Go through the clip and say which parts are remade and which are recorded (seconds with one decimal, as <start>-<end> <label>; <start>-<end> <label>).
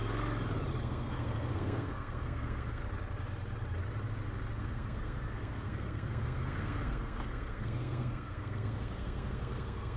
0.0-0.8 recorded; 0.8-2.8 remade; 2.8-4.6 recorded; 4.6-10.0 remade